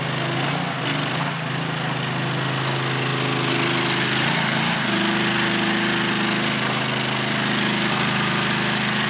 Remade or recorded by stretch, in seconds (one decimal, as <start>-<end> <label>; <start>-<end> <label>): 0.0-9.1 recorded